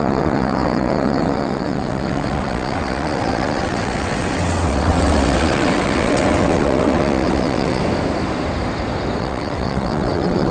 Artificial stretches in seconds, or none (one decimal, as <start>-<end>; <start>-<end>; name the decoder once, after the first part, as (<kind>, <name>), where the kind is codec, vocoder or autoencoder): 0.0-7.8 (vocoder, WaveNeXt); 9.2-10.5